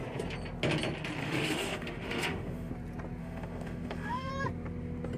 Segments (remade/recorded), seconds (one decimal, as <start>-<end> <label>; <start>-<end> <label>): 0.0-1.2 recorded; 1.2-2.7 remade; 2.7-3.2 recorded; 3.2-4.3 remade; 4.3-5.2 recorded